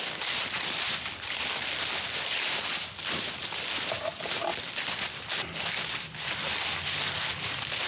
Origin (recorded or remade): recorded